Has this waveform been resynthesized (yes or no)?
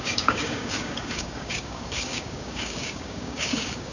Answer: yes